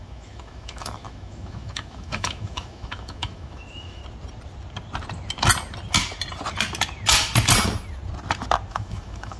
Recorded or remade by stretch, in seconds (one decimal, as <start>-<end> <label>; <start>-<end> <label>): 0.0-4.0 remade; 4.0-8.7 recorded; 8.7-9.4 remade